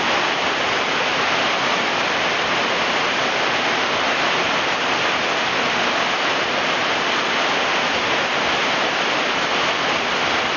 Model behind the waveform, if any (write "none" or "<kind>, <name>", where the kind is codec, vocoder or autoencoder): none